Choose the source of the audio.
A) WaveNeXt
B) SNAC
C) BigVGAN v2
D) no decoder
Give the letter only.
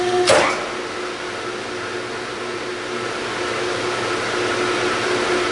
D